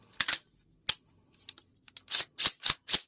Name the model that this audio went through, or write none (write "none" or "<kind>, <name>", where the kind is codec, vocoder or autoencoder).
none